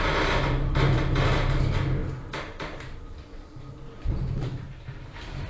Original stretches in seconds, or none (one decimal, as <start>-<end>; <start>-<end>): 0.0-2.0